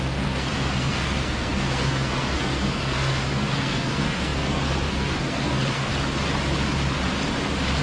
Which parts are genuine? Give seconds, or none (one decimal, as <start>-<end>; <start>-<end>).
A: 5.9-7.8